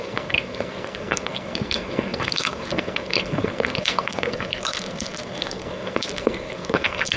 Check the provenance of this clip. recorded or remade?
remade